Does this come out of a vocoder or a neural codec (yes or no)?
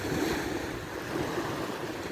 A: no